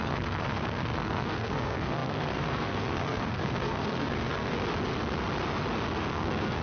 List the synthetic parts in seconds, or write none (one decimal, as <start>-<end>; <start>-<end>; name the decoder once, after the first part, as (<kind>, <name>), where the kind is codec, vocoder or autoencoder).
0.0-4.6 (codec, SNAC); 6.1-6.6

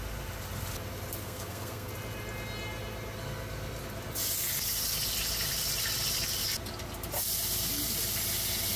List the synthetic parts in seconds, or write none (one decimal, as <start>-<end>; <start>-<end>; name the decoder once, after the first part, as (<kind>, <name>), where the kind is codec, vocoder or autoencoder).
1.2-1.9 (codec, SNAC)

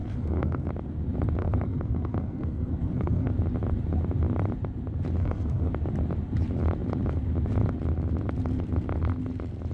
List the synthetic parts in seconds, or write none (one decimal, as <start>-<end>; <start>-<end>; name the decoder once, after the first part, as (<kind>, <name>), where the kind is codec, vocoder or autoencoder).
0.0-0.7 (codec, SNAC); 1.4-3.3; 5.2-5.7

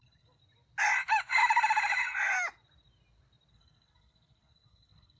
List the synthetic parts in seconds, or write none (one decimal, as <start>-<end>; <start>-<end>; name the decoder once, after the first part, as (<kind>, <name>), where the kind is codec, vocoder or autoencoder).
0.0-0.4 (codec, SNAC); 3.5-5.2

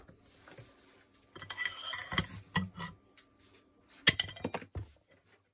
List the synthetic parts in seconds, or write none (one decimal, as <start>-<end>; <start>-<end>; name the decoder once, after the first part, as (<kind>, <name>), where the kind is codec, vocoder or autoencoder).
none